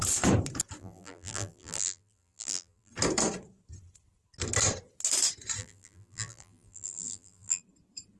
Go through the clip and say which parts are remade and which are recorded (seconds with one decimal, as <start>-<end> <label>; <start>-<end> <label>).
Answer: 0.0-0.8 recorded; 0.8-2.9 remade; 2.9-5.6 recorded; 5.6-7.6 remade; 7.6-8.2 recorded